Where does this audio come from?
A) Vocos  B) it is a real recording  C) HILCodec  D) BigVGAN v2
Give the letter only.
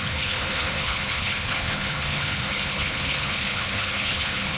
C